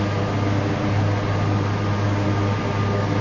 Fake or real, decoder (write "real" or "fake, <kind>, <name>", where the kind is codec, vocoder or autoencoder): real